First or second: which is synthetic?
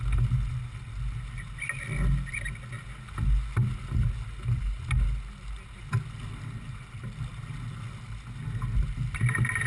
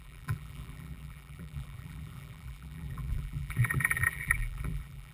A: second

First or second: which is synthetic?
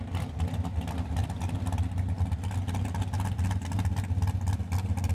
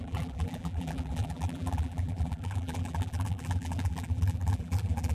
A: second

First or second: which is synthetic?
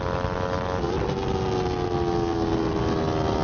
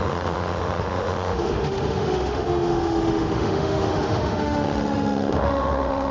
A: second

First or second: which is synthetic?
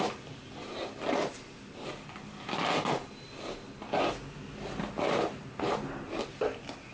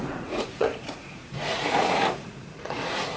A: second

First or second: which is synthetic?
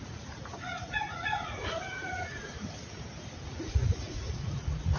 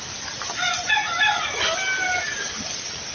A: first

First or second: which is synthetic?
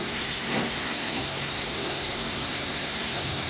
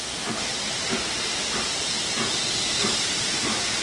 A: first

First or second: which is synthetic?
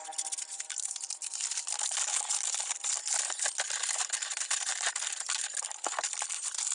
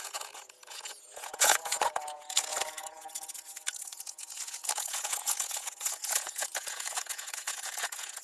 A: second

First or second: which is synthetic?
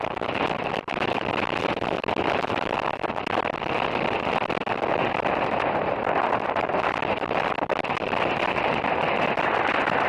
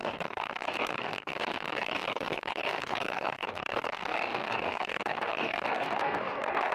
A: second